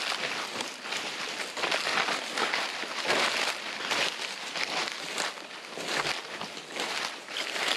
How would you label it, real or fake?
real